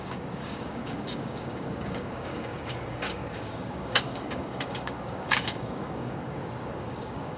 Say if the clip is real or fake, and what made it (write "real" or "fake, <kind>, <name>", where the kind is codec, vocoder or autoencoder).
fake, codec, DAC